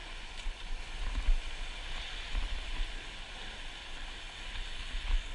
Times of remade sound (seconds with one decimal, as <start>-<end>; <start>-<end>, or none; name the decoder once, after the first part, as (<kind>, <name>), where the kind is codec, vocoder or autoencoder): 0.0-0.8 (vocoder, Vocos)